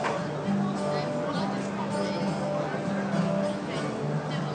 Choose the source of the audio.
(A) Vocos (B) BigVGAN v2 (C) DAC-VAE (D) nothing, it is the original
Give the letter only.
D